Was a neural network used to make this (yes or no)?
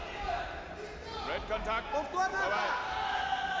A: no